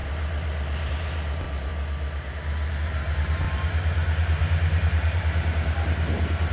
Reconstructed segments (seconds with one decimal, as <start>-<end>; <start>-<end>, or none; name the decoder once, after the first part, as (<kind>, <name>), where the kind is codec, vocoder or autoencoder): 0.0-1.7 (vocoder, BigVGAN v2); 2.8-6.5